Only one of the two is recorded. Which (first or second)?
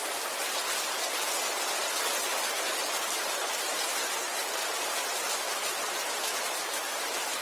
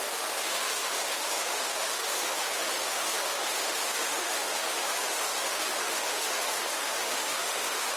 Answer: first